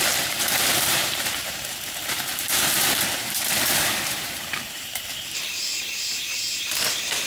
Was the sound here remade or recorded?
remade